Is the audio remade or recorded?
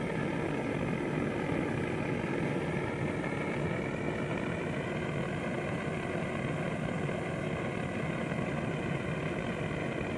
recorded